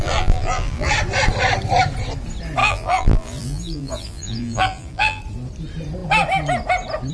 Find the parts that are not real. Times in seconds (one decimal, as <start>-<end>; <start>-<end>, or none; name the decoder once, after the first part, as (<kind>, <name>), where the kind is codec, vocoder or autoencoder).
0.0-0.9 (vocoder, BigVGAN v2); 2.6-5.2